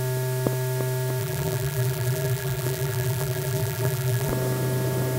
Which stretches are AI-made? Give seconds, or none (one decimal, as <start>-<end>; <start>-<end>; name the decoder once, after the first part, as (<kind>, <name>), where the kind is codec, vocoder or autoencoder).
1.2-4.3 (vocoder, BigVGAN v2)